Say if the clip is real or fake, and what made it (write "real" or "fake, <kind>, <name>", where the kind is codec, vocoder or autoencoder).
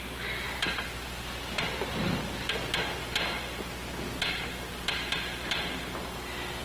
real